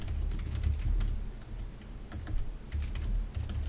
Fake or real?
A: real